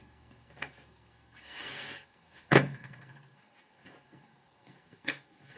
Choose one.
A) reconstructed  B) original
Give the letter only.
A